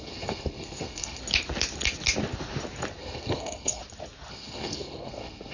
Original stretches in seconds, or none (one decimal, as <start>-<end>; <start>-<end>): 1.2-3.0; 3.8-4.3